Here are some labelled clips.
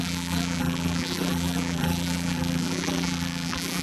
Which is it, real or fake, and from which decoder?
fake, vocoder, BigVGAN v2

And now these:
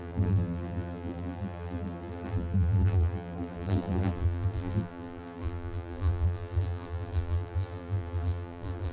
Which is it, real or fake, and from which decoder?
fake, vocoder, BigVGAN v2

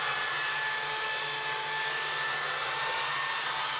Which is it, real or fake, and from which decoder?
real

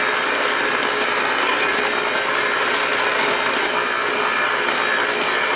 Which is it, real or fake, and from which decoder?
real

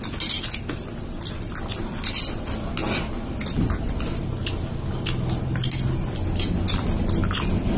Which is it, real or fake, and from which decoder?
real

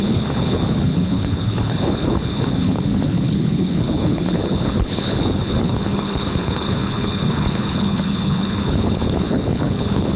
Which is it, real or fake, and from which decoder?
fake, codec, HILCodec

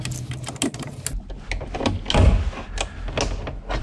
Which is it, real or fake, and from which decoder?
real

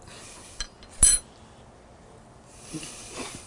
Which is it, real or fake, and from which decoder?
real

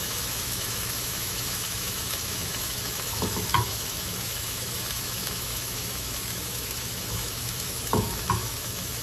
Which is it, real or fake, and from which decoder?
fake, autoencoder, DAC-VAE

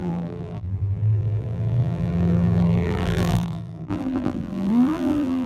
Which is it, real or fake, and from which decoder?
fake, vocoder, BigVGAN v2